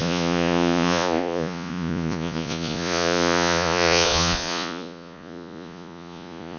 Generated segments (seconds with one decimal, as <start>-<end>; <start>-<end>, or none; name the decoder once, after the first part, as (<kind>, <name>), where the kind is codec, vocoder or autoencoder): 0.0-6.6 (vocoder, Vocos)